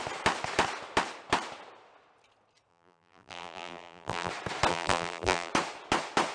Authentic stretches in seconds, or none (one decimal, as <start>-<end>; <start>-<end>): 0.0-2.7; 4.3-4.7; 5.5-6.3